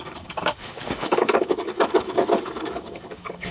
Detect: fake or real fake